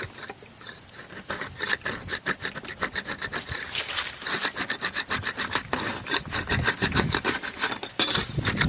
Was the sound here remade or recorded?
recorded